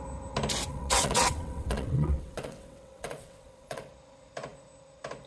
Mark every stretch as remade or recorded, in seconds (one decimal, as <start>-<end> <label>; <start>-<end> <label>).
0.0-0.7 recorded; 0.7-3.9 remade; 3.9-5.3 recorded

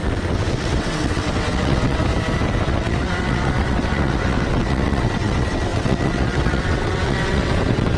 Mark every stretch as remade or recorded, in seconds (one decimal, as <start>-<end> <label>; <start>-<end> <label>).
0.0-2.0 remade; 2.0-2.6 recorded; 2.6-8.0 remade

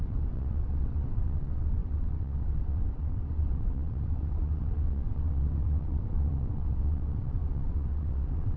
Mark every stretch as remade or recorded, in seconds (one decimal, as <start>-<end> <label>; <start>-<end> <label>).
0.0-8.6 remade

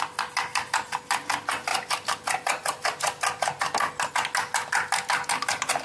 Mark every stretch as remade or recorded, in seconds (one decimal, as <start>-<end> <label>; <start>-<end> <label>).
0.0-5.8 recorded